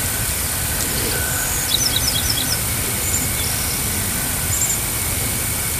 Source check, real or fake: real